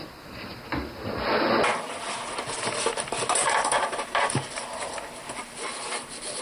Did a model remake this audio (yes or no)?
no